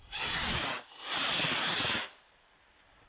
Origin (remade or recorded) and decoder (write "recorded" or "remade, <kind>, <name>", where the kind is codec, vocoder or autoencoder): recorded